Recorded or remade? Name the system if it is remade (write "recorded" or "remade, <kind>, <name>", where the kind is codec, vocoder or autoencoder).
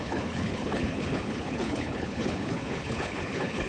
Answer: remade, codec, HILCodec